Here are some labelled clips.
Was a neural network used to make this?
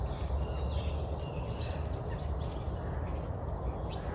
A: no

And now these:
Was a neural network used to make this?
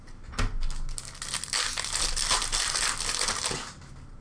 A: no